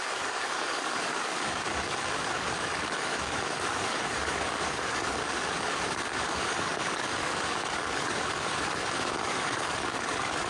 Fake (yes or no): yes